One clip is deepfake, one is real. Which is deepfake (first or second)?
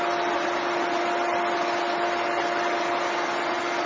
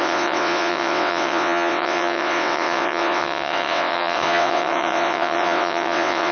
second